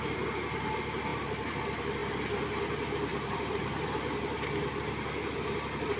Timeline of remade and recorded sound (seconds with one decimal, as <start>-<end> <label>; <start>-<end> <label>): 0.0-1.1 recorded; 1.1-1.6 remade; 1.6-3.1 recorded; 3.1-3.8 remade; 3.8-6.0 recorded